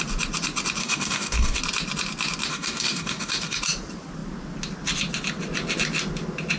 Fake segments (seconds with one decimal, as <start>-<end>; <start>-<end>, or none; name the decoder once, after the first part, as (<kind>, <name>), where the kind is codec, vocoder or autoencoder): 0.8-1.6 (codec, DAC); 2.5-3.6